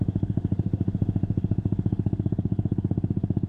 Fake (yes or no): yes